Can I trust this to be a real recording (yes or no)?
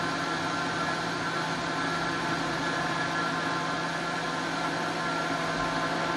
yes